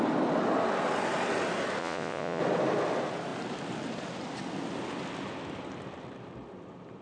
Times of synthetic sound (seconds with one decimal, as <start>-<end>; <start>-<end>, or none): 1.8-2.4